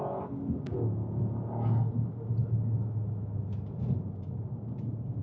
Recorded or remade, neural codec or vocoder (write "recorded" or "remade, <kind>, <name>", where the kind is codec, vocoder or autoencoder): recorded